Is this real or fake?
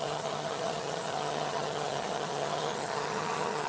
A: fake